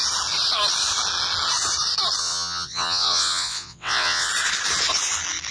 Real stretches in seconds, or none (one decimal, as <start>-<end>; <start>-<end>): 0.0-2.2; 4.3-5.5